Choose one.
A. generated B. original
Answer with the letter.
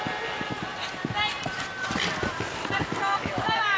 B